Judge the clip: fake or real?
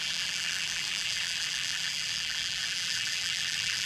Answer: fake